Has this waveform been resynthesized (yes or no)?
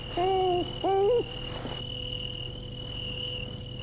no